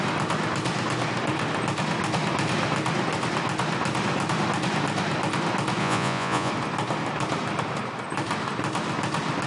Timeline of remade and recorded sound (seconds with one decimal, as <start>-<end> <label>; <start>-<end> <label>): 0.0-5.8 recorded; 5.8-6.5 remade; 6.5-9.5 recorded